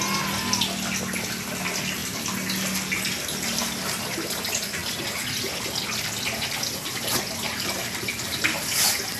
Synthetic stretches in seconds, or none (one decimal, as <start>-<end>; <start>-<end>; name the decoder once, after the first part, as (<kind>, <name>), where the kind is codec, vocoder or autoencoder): none